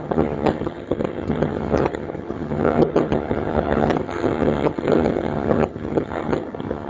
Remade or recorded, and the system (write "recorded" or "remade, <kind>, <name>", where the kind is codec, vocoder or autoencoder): remade, vocoder, HiFi-GAN